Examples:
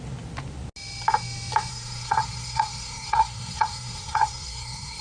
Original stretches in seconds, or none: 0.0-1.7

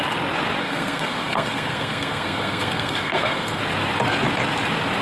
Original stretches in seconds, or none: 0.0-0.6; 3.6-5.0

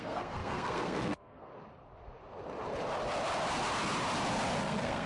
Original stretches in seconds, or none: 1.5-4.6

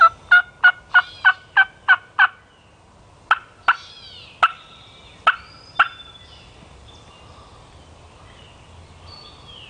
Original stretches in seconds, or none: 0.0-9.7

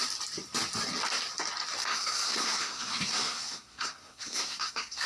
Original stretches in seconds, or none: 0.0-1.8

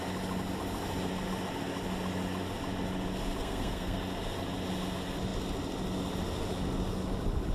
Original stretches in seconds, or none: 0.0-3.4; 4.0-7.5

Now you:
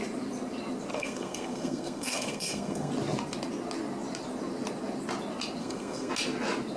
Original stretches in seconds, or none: 0.0-0.9; 2.9-5.6; 6.1-6.8

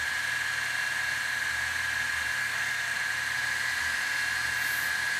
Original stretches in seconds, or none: 0.0-2.4; 3.0-5.2